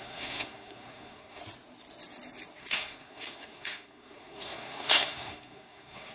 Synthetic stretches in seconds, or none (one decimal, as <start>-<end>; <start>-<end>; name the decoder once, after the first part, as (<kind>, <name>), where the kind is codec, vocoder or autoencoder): 0.0-1.4 (codec, SNAC); 2.6-6.1